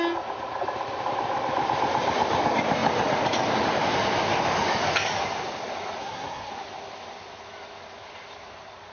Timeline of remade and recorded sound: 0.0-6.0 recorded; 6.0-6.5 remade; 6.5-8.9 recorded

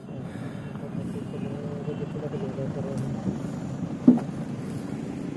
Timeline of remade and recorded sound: 0.0-5.4 recorded

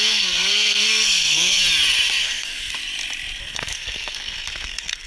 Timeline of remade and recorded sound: 0.0-1.6 remade; 1.6-2.2 recorded; 2.2-2.8 remade; 2.8-3.4 recorded; 3.4-5.1 remade

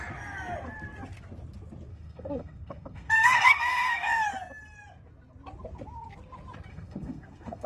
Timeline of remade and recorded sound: 0.0-1.9 recorded; 1.9-4.3 remade; 4.3-6.7 recorded; 6.7-7.7 remade

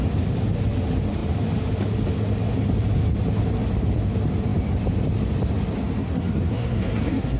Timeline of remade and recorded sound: 0.0-6.0 recorded; 6.0-7.4 remade

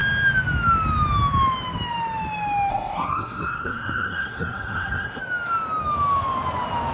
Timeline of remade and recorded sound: 0.0-2.7 recorded; 2.7-5.2 remade; 5.2-6.9 recorded